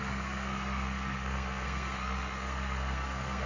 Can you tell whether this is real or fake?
fake